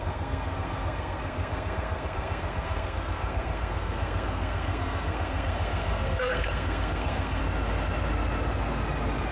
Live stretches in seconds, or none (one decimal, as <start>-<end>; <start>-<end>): 7.4-9.3